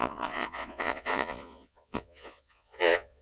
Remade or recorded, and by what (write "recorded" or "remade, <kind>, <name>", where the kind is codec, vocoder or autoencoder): remade, vocoder, Vocos